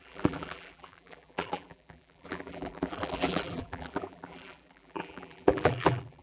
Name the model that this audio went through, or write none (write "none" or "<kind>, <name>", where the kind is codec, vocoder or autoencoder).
vocoder, BigVGAN v2